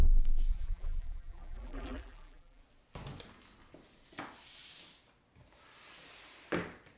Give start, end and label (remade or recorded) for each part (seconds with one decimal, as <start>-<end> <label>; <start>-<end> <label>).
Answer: 0.0-0.5 recorded; 0.5-2.6 remade; 2.6-7.0 recorded